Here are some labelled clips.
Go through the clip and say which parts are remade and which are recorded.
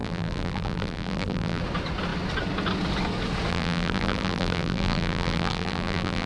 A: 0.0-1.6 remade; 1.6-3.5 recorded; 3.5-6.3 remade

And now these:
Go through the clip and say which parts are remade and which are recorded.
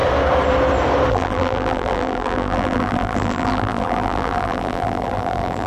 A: 0.0-1.1 recorded; 1.1-5.7 remade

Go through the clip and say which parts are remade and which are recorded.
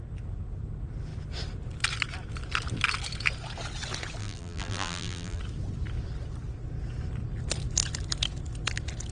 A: 0.0-4.2 recorded; 4.2-5.4 remade; 5.4-9.1 recorded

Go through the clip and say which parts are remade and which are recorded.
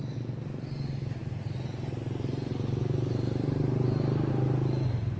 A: 0.0-5.2 recorded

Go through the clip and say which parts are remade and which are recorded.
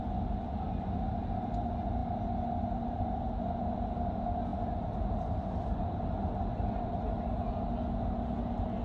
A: 0.0-8.8 recorded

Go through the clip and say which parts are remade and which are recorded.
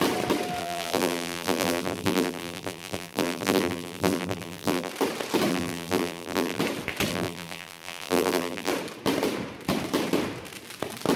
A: 0.0-0.6 recorded; 0.6-4.9 remade; 4.9-5.5 recorded; 5.5-6.6 remade; 6.6-7.1 recorded; 7.1-8.7 remade; 8.7-11.2 recorded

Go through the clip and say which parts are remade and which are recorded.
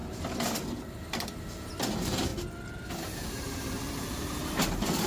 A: 0.0-1.7 recorded; 1.7-2.3 remade; 2.3-3.2 recorded; 3.2-5.1 remade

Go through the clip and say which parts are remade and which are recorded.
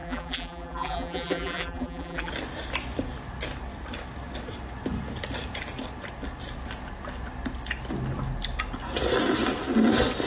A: 0.0-2.3 remade; 2.3-10.3 recorded